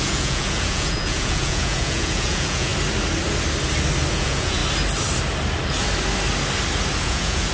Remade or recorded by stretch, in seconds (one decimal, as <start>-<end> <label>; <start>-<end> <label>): 0.0-2.7 remade; 2.7-4.1 recorded; 4.1-4.6 remade; 4.6-7.0 recorded; 7.0-7.5 remade